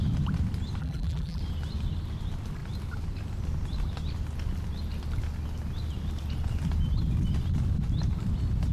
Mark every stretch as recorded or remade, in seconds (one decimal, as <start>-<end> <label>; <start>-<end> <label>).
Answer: 0.0-0.8 recorded; 0.8-1.4 remade; 1.4-8.7 recorded